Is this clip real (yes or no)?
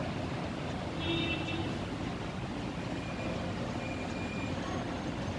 yes